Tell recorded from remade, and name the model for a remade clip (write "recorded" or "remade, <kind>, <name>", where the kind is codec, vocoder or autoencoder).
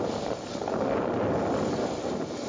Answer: recorded